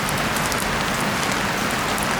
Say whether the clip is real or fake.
real